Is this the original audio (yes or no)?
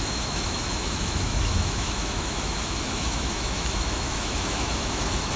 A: no